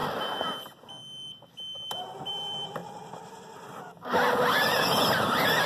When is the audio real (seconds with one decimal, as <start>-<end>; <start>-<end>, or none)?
0.0-5.7